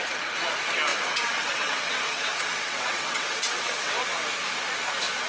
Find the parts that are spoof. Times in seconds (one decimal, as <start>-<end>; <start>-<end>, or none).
0.9-4.1